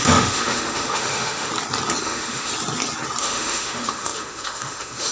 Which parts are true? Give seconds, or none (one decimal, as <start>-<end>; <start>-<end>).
1.5-2.0; 2.5-3.2